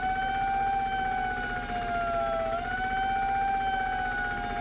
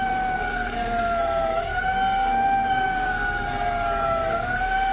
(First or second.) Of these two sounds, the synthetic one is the second